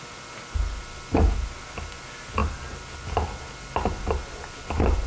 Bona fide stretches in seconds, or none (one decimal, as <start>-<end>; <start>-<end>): 0.0-5.1

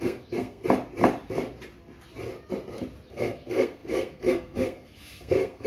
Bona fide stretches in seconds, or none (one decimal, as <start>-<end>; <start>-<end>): 0.6-3.1

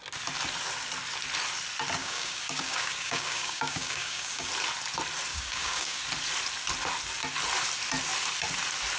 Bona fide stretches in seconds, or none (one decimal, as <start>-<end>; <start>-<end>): 0.0-2.0; 4.5-5.3; 6.0-9.0

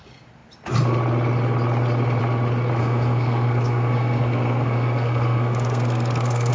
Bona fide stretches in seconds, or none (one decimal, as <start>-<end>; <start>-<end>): 0.0-2.8

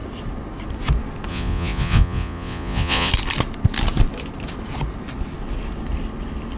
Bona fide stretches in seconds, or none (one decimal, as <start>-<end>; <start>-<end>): 0.0-1.3; 3.1-6.6

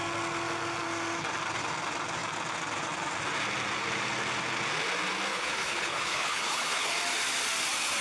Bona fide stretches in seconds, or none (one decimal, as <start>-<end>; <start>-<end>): 0.0-5.3; 6.9-8.0